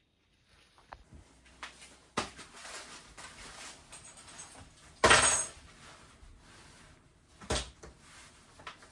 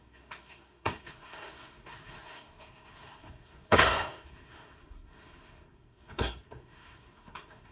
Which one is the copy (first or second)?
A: second